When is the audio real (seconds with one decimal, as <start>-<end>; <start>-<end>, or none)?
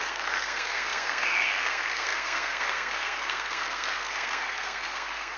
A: none